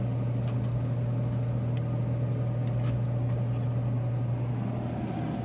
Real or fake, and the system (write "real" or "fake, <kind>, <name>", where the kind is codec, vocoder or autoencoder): real